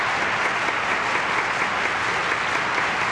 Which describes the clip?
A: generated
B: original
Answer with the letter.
B